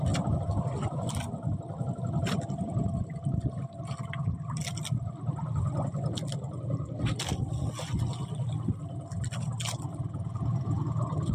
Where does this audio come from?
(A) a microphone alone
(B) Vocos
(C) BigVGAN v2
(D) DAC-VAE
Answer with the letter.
A